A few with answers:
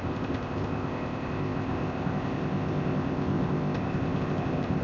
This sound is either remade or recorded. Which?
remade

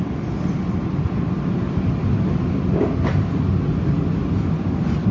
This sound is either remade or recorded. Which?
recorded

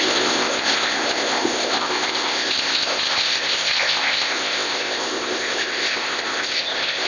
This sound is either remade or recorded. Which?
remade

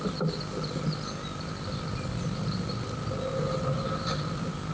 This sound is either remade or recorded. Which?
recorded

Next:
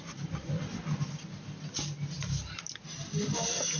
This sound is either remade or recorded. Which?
recorded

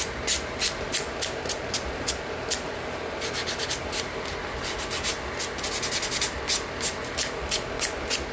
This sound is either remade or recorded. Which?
recorded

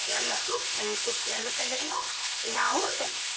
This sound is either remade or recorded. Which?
remade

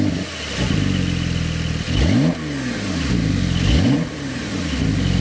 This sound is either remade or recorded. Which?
recorded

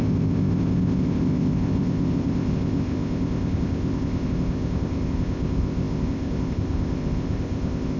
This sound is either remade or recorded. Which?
remade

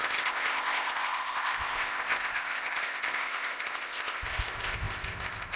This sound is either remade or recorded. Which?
remade